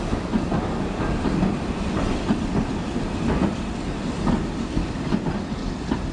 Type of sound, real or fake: real